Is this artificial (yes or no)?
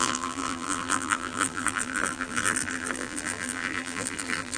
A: yes